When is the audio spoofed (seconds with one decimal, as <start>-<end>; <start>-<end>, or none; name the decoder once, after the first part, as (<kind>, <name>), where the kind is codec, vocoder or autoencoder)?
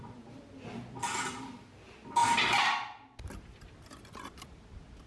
none